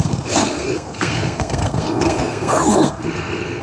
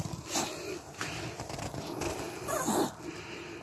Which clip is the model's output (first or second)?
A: first